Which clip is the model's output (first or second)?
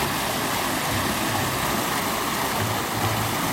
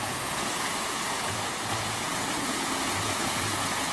second